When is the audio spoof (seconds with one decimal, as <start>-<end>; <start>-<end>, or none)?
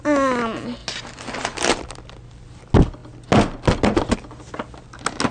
none